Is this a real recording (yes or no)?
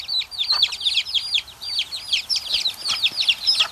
no